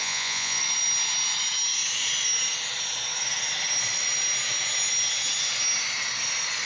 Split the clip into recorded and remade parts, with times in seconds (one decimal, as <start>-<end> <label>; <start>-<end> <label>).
0.0-0.6 remade; 0.6-6.7 recorded